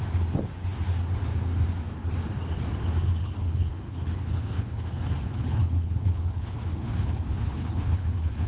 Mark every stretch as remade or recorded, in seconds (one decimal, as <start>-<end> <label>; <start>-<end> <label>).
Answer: 0.0-3.2 recorded; 3.2-8.5 remade